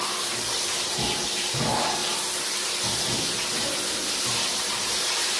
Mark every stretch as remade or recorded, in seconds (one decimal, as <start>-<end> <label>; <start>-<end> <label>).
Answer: 0.0-2.0 remade; 2.0-4.3 recorded; 4.3-5.4 remade